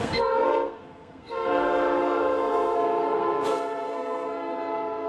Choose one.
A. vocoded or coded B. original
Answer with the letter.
A